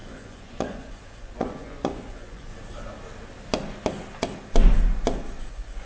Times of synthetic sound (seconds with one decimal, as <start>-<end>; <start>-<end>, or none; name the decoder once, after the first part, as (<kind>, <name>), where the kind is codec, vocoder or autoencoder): 0.0-2.5 (vocoder, Vocos); 5.5-5.9